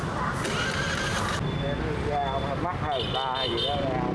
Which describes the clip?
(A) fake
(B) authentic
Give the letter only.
B